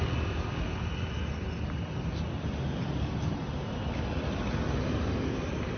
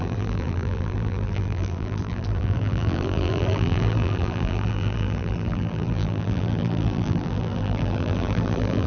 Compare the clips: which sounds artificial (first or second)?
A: second